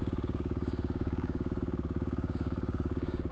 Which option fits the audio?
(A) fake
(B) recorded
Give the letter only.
A